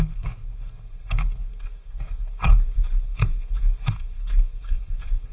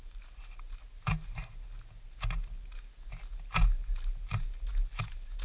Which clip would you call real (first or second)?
second